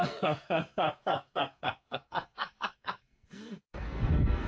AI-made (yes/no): yes